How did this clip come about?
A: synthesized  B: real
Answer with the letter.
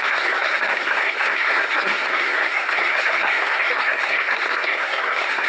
A